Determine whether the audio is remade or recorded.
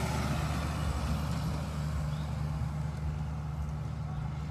recorded